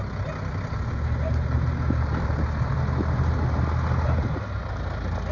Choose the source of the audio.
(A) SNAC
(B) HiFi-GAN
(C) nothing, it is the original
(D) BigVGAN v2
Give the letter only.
C